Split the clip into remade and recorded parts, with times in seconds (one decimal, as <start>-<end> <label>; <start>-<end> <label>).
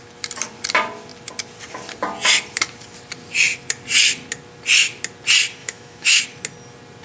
0.0-5.6 recorded; 5.6-6.2 remade; 6.2-7.0 recorded